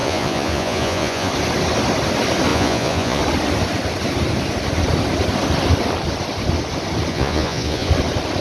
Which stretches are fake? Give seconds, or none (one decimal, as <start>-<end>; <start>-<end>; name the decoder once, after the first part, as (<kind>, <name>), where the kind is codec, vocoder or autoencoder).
0.0-1.3 (vocoder, Vocos); 2.5-3.2; 7.1-7.9